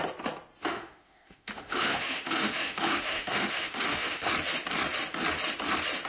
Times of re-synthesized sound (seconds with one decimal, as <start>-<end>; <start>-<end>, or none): 0.6-4.3